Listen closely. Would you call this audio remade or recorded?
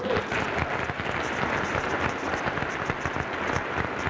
recorded